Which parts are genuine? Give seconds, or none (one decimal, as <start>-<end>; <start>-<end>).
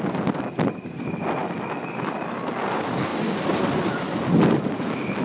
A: 0.0-5.2